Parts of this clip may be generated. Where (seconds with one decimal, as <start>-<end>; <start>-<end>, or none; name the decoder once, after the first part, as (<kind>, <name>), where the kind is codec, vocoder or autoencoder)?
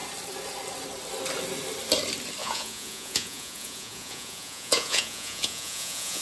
2.4-6.2 (vocoder, Vocos)